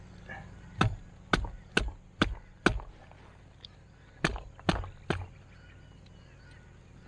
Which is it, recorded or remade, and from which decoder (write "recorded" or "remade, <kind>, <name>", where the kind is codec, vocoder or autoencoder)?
recorded